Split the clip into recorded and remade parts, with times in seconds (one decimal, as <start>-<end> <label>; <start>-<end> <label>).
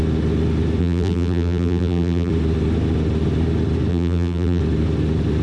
0.0-0.8 recorded; 0.8-2.3 remade; 2.3-3.9 recorded; 3.9-4.6 remade; 4.6-5.4 recorded